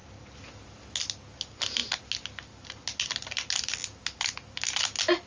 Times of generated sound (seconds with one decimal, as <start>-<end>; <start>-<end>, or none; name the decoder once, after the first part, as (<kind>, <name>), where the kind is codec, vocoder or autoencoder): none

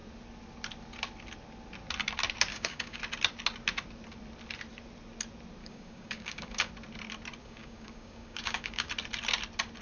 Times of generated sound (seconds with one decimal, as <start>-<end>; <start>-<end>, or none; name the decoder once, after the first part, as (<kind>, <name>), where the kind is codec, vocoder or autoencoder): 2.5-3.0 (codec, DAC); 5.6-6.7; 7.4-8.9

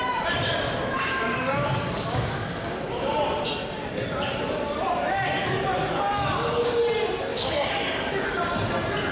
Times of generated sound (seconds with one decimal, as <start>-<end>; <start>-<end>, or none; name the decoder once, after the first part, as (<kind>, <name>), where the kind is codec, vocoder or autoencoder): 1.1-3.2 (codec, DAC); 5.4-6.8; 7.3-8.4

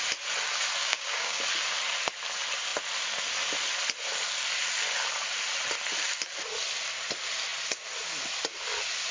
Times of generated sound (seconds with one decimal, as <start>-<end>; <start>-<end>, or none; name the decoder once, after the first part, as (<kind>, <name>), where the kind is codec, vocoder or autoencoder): 0.8-1.4 (codec, DAC)

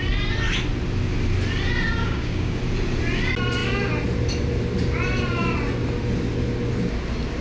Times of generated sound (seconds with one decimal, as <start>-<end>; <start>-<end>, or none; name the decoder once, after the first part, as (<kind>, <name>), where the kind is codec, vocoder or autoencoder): 2.0-2.6 (codec, DAC)

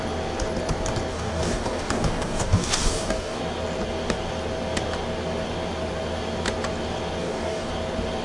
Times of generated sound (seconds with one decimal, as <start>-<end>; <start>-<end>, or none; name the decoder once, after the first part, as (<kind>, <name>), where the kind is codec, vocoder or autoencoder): 1.1-3.4 (codec, DAC); 7.2-7.7